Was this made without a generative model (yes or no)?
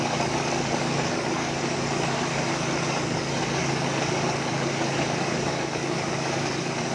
no